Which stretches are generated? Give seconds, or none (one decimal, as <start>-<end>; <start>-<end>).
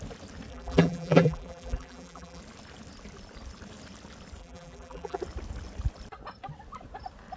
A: 0.5-2.4; 4.4-5.2